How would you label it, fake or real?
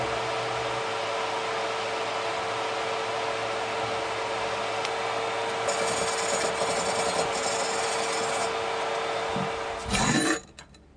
real